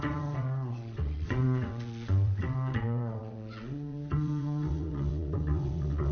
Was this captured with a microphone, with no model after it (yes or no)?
no